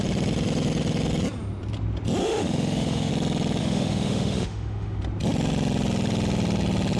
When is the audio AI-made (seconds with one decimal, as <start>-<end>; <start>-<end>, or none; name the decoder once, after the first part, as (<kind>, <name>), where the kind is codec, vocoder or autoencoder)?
2.2-3.1 (autoencoder, DAC-VAE); 3.6-5.0